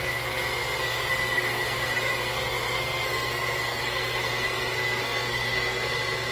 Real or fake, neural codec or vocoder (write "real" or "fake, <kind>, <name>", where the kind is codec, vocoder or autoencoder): fake, codec, SNAC